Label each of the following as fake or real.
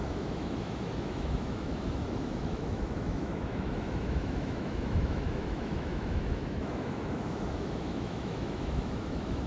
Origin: fake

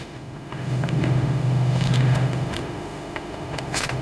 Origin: fake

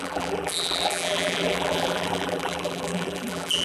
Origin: fake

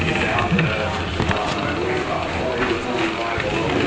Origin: real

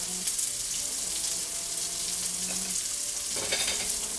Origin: real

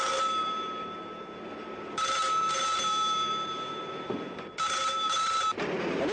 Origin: real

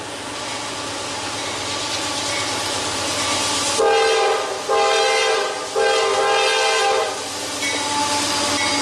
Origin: real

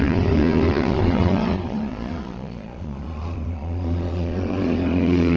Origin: fake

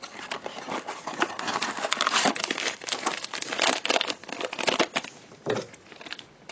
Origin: real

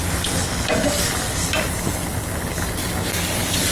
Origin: real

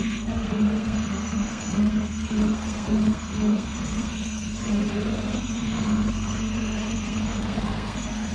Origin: fake